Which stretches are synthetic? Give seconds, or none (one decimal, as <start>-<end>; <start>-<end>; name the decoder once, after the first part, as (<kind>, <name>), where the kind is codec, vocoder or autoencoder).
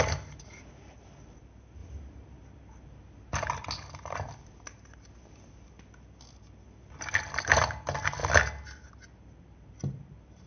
none